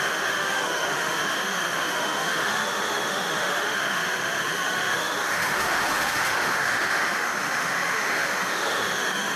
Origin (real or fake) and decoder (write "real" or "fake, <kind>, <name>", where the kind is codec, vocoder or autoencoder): fake, autoencoder, DAC-VAE